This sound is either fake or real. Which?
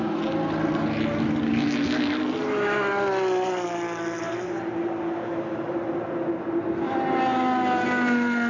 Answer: real